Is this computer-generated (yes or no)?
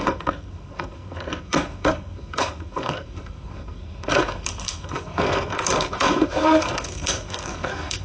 yes